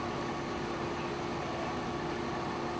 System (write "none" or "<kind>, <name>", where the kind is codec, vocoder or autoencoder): none